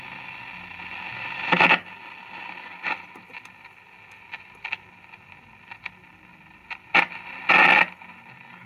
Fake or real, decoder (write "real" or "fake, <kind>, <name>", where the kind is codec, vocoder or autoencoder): real